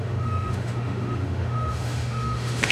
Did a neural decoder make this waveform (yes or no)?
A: yes